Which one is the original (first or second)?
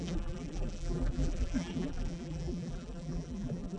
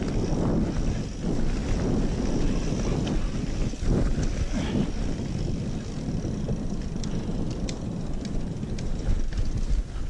second